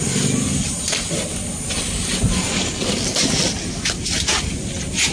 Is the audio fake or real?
real